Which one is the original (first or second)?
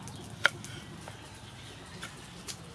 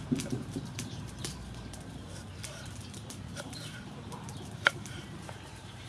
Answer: first